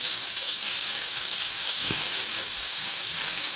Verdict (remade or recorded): remade